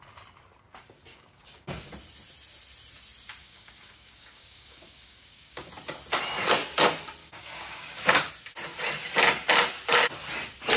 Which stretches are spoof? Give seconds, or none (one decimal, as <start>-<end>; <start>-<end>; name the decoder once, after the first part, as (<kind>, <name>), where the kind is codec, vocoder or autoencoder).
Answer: 1.1-1.9 (codec, DAC); 3.4-5.7; 7.2-8.3